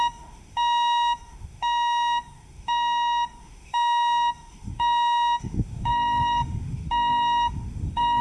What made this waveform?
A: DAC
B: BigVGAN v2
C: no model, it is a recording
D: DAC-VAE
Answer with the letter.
D